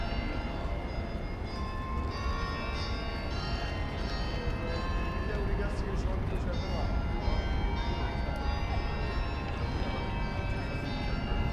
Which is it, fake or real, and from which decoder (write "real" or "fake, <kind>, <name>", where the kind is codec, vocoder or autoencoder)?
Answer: real